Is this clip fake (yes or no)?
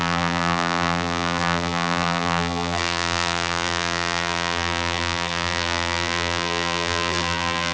yes